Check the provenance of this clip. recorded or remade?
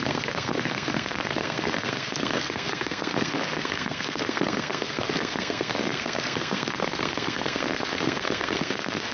remade